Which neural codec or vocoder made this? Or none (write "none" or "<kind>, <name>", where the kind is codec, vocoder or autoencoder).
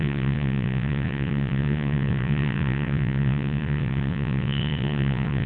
vocoder, WaveNeXt